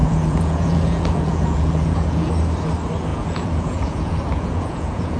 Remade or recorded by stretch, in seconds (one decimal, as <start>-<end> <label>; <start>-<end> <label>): 0.0-2.3 remade; 2.3-3.1 recorded; 3.1-5.2 remade

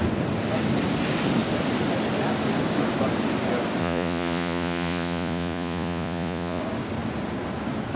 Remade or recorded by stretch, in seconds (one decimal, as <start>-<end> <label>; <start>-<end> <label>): 0.0-3.8 recorded; 3.8-6.6 remade; 6.6-8.0 recorded